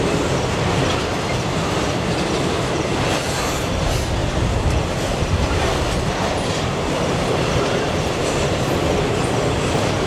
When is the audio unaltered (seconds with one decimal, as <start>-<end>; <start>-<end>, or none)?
0.0-4.2; 5.7-10.1